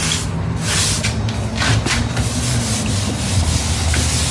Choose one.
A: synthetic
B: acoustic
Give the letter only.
B